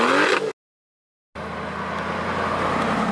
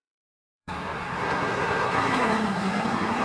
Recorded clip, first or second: first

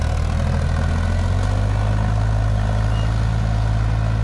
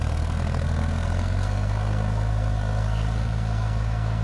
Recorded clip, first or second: first